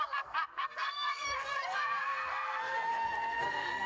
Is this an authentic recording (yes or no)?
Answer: no